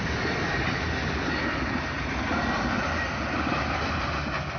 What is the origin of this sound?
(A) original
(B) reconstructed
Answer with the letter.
A